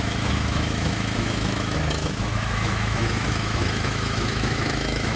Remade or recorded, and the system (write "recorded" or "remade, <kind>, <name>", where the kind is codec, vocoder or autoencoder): remade, autoencoder, DAC-VAE